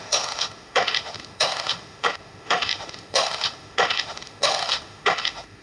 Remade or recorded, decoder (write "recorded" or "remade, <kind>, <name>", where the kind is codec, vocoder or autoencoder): remade, autoencoder, DAC-VAE